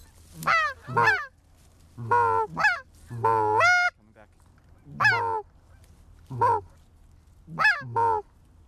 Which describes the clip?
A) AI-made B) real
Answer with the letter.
B